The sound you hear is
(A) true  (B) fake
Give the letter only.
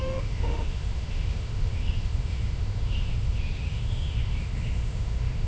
B